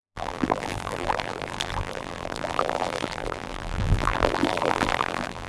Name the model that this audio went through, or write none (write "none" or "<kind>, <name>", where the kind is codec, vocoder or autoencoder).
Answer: vocoder, BigVGAN v2